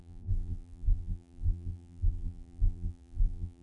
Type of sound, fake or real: fake